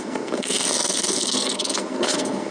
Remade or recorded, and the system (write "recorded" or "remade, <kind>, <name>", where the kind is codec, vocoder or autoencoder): remade, codec, SNAC